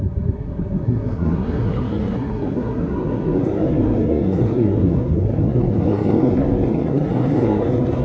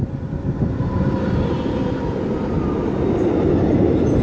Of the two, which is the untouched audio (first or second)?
second